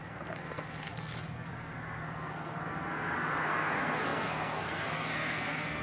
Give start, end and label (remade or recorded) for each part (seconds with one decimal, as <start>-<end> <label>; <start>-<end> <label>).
0.0-5.8 remade